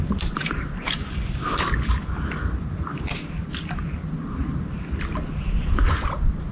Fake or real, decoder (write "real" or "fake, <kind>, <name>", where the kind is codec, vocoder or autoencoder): real